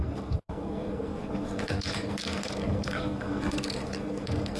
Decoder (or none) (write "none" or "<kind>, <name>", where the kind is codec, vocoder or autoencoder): codec, SNAC